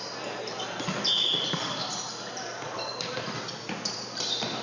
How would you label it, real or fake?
fake